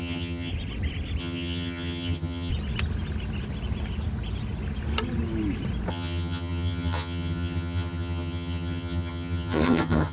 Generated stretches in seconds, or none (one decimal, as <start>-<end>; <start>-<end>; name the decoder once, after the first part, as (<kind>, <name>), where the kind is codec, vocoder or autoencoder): 0.0-0.5 (vocoder, HiFi-GAN); 1.2-2.5; 5.9-10.1